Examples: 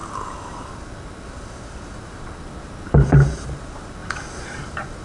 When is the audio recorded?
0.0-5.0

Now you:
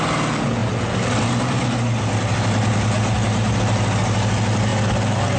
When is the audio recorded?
0.0-5.4

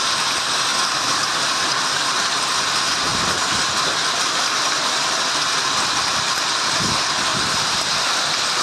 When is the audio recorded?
0.0-8.6

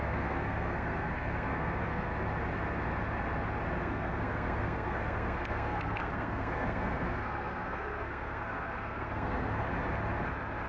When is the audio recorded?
2.1-3.8; 9.7-10.7

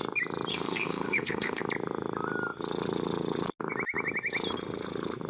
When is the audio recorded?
0.0-0.5; 1.6-5.3

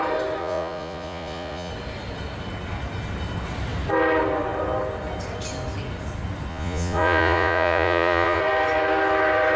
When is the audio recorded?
0.0-0.4; 1.7-6.5; 8.4-9.6

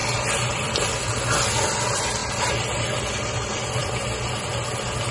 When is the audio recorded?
0.9-2.2; 3.1-5.1